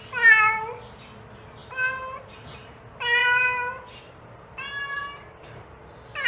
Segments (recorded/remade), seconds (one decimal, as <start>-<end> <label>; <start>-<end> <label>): 0.0-1.6 recorded; 1.6-2.8 remade; 2.8-3.2 recorded; 3.2-5.7 remade; 5.7-6.3 recorded